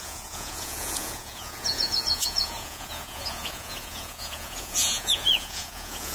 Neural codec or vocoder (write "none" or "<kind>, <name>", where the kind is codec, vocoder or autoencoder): vocoder, Vocos